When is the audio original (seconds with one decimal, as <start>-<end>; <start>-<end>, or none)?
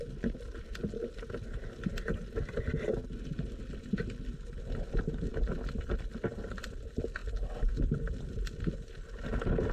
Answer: 0.0-9.7